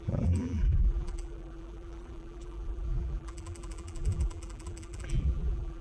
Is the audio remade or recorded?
remade